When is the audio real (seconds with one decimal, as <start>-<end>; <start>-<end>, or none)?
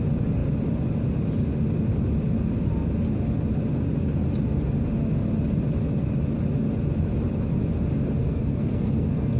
0.0-8.2